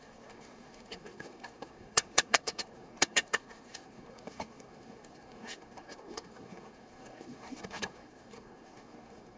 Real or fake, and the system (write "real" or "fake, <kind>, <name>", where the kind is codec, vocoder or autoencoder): fake, codec, SNAC